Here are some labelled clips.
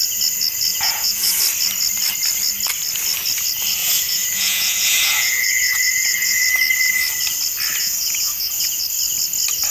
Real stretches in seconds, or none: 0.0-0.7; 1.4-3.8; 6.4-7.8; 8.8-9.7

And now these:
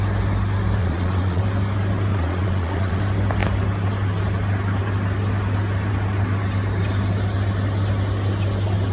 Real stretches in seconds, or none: 0.0-0.8; 1.4-2.1; 3.0-8.9

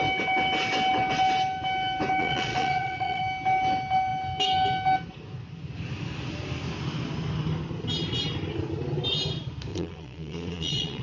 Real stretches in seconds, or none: 0.0-2.2; 3.2-9.7

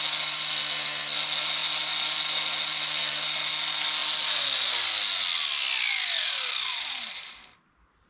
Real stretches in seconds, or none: 0.0-8.1

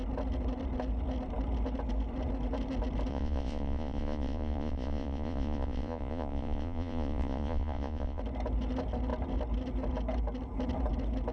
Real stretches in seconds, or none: 0.0-3.1; 8.2-11.3

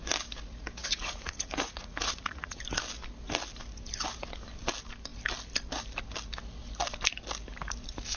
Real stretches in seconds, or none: 0.0-0.8; 2.6-8.2